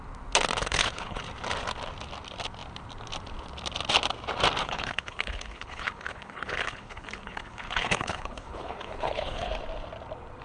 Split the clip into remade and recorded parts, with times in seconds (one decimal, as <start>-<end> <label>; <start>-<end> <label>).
0.0-0.6 recorded; 0.6-1.2 remade; 1.2-4.6 recorded; 4.6-9.5 remade; 9.5-10.4 recorded